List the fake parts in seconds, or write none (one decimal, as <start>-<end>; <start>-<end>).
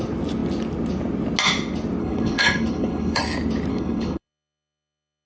2.0-3.2; 3.7-5.3